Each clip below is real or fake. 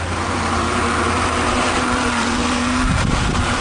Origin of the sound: fake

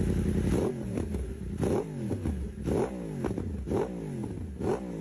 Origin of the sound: real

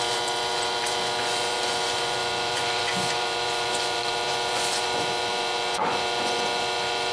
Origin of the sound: fake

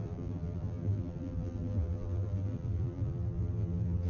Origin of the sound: fake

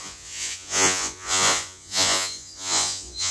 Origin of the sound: fake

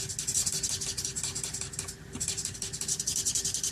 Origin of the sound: real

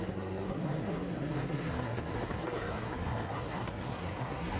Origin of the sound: fake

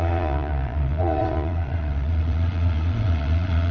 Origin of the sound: fake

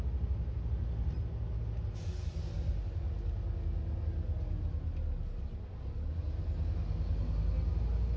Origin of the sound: real